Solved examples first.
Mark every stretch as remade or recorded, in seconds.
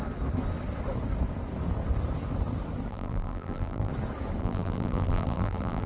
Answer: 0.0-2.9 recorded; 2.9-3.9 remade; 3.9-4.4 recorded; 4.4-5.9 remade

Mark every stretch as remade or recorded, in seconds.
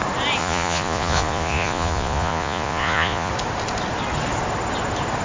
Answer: 0.0-0.4 recorded; 0.4-3.3 remade; 3.3-5.2 recorded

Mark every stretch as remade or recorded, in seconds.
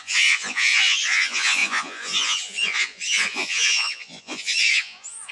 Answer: 0.0-5.3 remade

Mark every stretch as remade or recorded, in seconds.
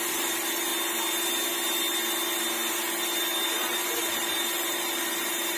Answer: 0.0-0.7 remade; 0.7-3.2 recorded; 3.2-5.6 remade